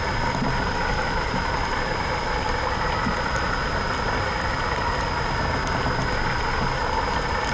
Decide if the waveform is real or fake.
real